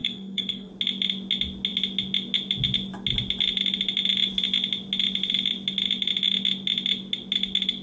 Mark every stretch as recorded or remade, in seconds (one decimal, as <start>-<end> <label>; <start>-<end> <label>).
0.0-0.7 remade; 0.7-7.8 recorded